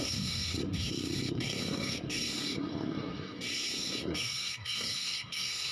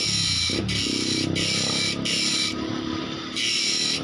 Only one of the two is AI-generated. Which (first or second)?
first